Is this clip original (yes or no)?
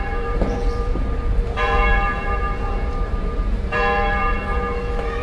no